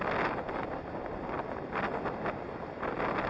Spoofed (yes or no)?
no